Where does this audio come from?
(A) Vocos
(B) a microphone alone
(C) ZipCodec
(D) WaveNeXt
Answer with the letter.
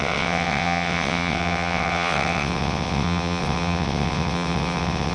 D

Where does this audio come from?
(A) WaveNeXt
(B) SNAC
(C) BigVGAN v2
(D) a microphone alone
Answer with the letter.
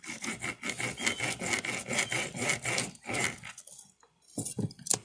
D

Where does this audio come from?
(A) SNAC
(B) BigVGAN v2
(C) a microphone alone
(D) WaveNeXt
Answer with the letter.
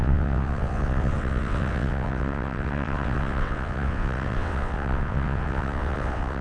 D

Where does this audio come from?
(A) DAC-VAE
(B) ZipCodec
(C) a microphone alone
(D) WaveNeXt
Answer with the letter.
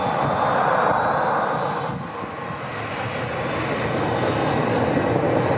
C